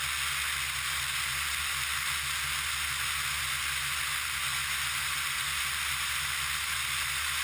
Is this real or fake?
real